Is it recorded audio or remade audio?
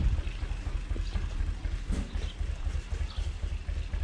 recorded